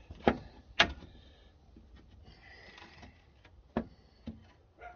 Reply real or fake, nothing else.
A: real